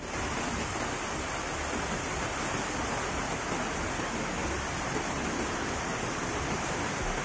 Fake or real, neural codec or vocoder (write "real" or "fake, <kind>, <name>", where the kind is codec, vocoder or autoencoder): real